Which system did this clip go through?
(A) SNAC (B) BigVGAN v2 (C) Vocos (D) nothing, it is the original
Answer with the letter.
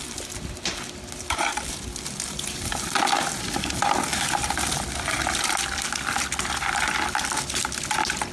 D